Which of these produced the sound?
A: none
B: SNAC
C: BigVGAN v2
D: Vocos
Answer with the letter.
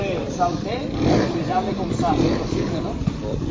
C